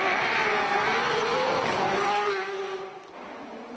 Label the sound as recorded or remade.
recorded